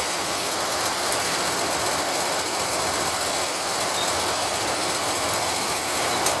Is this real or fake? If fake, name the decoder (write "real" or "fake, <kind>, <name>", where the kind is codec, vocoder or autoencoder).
real